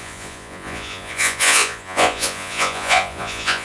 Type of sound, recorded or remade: remade